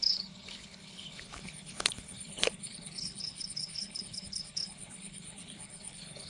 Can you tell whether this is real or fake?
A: fake